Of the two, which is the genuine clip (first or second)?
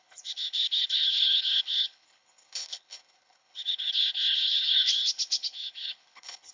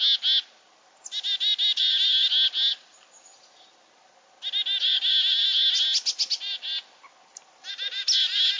second